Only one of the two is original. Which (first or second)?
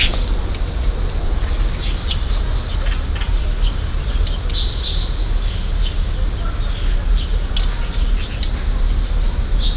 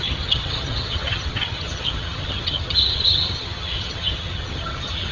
first